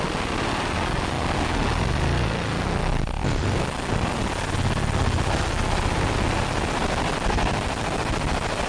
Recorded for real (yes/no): yes